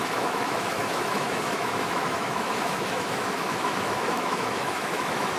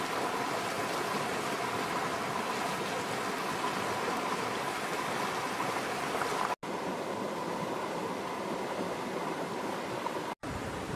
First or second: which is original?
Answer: second